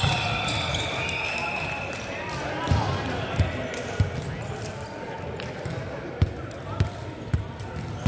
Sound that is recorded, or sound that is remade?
recorded